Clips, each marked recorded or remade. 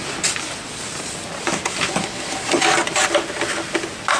recorded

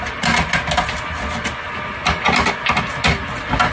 recorded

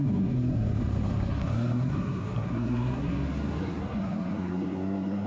remade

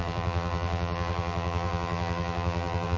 remade